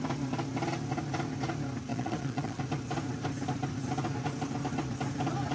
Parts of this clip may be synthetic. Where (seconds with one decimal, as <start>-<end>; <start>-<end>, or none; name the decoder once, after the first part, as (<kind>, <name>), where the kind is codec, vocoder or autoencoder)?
1.9-2.6 (vocoder, Vocos)